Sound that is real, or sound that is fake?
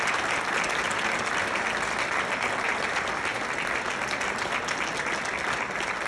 real